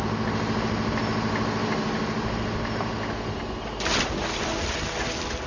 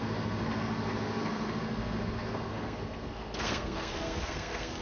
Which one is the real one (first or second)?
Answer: first